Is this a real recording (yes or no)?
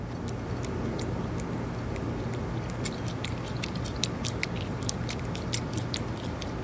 yes